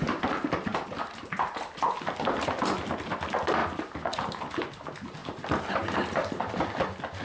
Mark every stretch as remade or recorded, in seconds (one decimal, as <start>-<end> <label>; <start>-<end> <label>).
0.0-5.2 recorded; 5.2-6.6 remade; 6.6-7.2 recorded